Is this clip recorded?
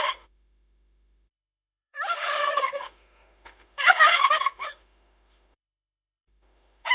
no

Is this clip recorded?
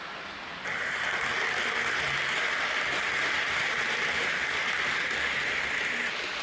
yes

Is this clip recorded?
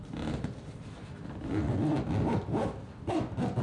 yes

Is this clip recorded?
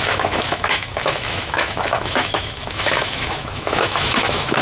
no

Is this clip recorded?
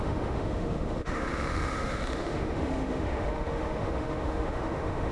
no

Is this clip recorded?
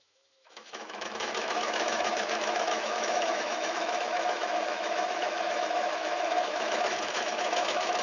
no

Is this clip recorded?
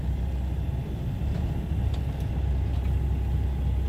yes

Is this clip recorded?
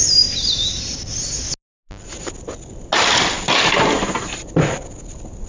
yes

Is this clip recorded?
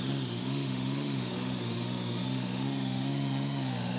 no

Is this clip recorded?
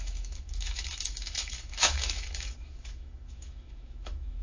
no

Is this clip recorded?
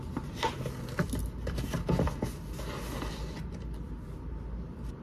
yes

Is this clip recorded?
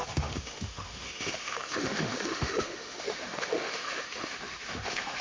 no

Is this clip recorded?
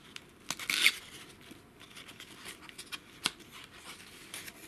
yes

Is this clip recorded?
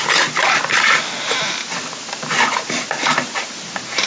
yes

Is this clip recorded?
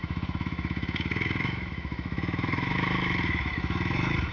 no